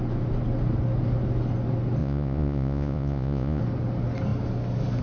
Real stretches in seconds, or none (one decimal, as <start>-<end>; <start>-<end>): 0.0-2.0; 3.6-5.0